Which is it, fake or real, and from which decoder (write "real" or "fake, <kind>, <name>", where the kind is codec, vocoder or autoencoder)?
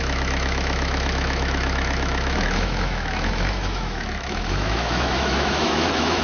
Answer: fake, autoencoder, DAC-VAE